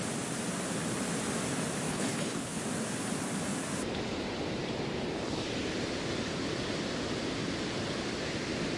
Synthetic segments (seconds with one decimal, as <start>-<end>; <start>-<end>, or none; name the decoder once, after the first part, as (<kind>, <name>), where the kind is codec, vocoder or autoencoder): 1.9-2.6 (codec, HILCodec)